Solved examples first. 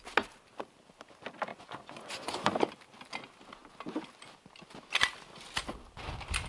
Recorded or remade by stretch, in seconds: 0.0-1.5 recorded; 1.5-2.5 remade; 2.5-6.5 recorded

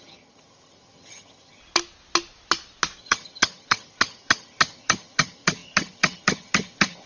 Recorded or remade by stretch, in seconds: 0.0-1.6 remade; 1.6-3.0 recorded; 3.0-7.1 remade

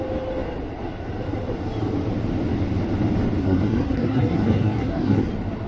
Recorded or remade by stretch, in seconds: 0.0-3.4 recorded; 3.4-5.3 remade; 5.3-5.7 recorded

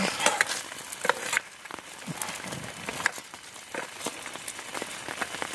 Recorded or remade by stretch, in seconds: 0.0-5.5 recorded